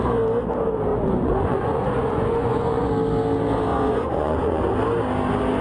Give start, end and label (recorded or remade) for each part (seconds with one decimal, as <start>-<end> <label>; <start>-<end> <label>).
0.0-0.9 recorded; 0.9-2.9 remade; 2.9-3.7 recorded; 3.7-4.6 remade; 4.6-5.6 recorded

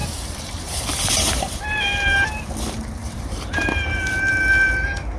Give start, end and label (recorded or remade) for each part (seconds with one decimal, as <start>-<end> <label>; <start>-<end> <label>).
0.0-2.4 remade; 2.4-3.0 recorded; 3.0-3.7 remade; 3.7-5.2 recorded